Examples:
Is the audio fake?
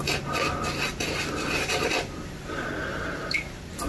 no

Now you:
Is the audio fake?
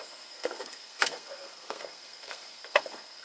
yes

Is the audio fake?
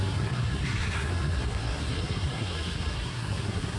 yes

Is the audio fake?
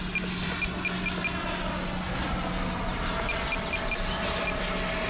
no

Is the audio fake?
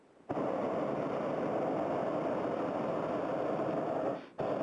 no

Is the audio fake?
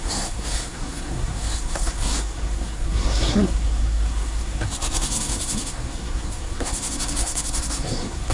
yes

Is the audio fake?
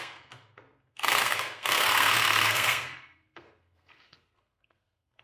yes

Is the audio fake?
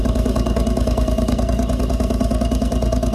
yes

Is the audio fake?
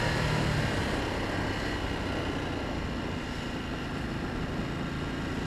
no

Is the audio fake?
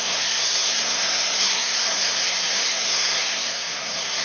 yes